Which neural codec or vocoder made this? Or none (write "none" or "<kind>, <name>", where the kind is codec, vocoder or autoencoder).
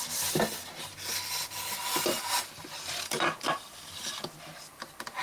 none